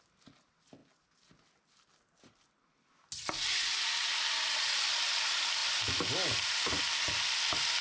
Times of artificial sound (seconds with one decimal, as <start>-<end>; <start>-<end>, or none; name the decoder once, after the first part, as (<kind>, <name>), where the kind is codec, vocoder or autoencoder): none